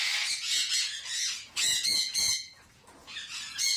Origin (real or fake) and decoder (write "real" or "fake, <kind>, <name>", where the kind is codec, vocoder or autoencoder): fake, vocoder, Vocos